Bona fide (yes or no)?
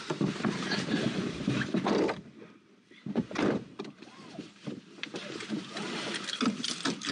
no